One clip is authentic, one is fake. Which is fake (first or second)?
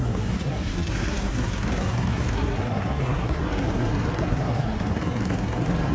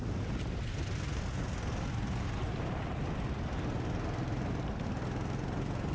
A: first